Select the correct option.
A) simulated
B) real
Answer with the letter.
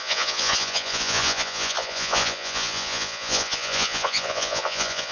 A